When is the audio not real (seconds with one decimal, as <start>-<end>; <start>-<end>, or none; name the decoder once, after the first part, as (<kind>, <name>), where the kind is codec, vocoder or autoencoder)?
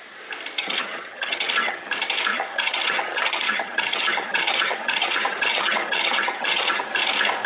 0.6-1.9 (vocoder, HiFi-GAN); 2.3-6.8